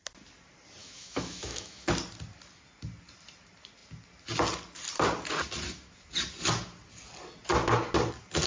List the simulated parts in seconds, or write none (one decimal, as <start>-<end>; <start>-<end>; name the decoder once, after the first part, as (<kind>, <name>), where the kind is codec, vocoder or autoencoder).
0.8-1.9 (autoencoder, DAC-VAE)